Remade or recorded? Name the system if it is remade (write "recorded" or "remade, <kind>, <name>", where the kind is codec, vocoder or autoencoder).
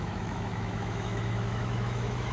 remade, autoencoder, DAC-VAE